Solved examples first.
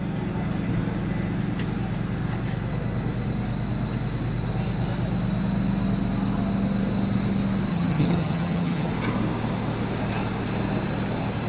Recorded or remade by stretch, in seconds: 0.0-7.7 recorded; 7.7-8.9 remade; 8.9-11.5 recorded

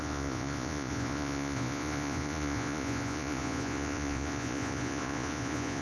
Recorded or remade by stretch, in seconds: 0.0-5.8 remade

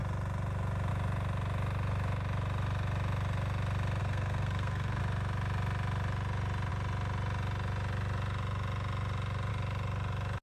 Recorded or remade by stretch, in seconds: 0.0-4.0 recorded; 4.0-5.0 remade; 5.0-10.4 recorded

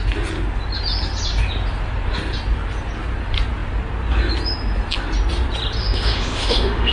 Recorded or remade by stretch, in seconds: 0.0-5.8 recorded; 5.8-6.9 remade